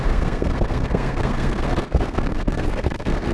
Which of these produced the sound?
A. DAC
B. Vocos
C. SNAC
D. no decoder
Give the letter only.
C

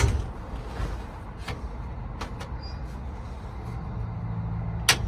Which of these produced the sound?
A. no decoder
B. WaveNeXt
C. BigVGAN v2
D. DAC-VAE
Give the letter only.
A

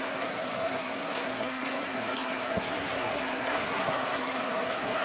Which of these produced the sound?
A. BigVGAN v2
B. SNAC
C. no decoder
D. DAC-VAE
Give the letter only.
B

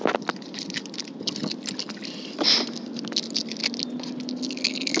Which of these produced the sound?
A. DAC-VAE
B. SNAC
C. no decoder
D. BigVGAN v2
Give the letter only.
C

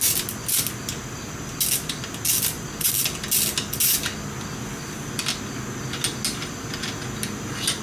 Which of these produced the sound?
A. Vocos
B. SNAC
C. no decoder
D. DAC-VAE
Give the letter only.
C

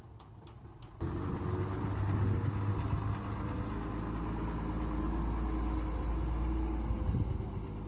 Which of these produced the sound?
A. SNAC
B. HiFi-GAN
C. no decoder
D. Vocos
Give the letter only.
C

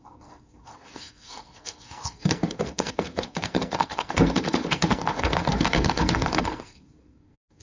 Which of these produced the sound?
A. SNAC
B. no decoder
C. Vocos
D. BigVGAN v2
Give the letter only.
A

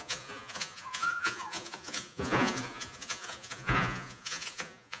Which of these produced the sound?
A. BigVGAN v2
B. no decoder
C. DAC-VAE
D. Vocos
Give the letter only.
D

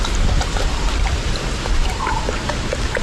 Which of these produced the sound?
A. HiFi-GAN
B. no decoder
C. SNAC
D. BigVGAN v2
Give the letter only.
B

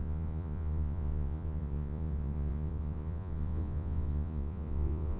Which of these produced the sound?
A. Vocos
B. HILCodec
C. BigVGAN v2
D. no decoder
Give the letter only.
A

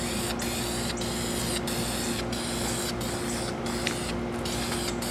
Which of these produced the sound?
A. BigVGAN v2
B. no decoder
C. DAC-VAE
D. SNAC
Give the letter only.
B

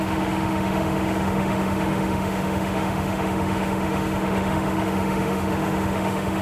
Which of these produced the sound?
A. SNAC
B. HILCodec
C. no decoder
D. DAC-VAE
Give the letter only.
D